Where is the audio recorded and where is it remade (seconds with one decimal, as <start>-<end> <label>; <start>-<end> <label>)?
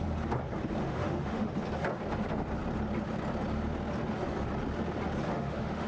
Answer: 0.0-0.8 recorded; 0.8-1.5 remade; 1.5-5.3 recorded; 5.3-5.9 remade